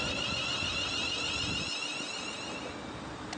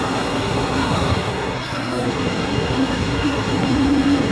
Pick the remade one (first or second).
second